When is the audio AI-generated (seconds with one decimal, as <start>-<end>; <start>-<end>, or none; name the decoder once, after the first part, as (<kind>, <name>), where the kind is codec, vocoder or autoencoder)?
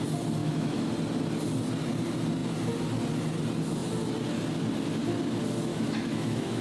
0.4-0.9 (autoencoder, DAC-VAE); 5.7-6.6